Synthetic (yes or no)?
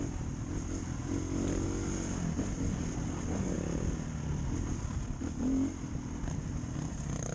no